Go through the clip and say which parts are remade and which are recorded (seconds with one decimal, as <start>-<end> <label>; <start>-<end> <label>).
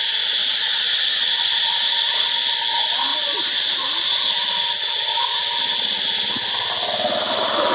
0.0-0.4 recorded; 0.4-1.0 remade; 1.0-7.7 recorded